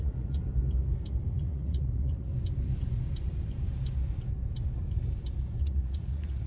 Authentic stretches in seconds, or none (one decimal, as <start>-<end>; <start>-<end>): 0.4-1.3; 2.3-5.6